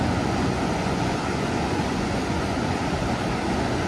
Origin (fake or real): fake